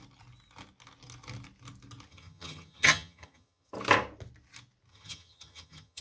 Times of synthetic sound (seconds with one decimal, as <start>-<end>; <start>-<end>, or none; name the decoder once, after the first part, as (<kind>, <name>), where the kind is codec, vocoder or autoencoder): 2.1-3.7 (vocoder, HiFi-GAN); 4.9-6.0